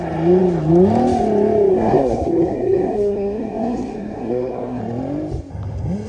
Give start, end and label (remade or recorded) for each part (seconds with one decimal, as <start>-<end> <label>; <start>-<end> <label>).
0.0-1.7 recorded; 1.7-4.8 remade; 4.8-6.1 recorded